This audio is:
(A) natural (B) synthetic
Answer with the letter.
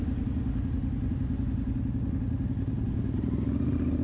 A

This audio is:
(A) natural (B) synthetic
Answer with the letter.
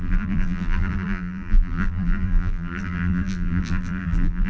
B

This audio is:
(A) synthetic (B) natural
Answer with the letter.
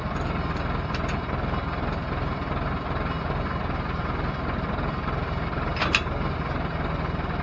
B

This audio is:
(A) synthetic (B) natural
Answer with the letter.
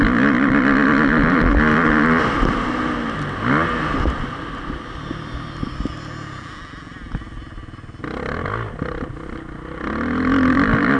B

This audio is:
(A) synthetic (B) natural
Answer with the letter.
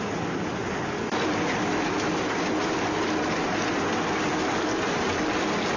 B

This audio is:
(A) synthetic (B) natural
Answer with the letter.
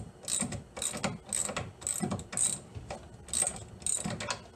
B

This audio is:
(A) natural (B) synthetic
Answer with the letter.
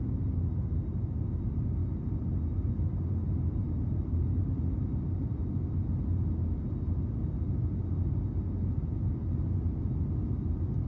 A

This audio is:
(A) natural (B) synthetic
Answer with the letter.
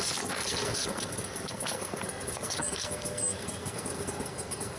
B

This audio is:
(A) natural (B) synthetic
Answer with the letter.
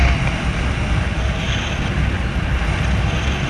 A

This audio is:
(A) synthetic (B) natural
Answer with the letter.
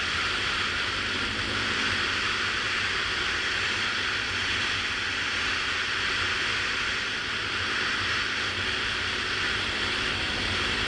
B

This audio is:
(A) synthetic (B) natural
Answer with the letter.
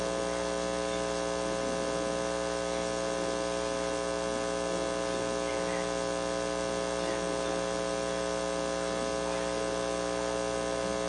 B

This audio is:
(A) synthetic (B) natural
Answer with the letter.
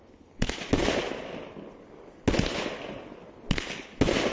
B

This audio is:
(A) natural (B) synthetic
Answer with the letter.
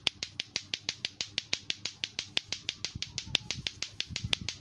B